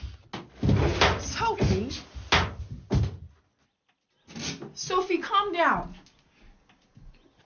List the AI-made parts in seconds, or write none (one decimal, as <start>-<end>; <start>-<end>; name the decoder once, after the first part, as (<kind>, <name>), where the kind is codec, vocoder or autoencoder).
none